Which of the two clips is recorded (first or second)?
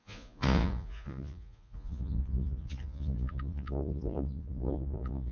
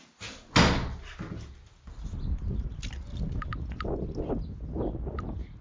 second